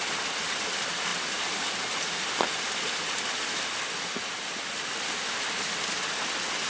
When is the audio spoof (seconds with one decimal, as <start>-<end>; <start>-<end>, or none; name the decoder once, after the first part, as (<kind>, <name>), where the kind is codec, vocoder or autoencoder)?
none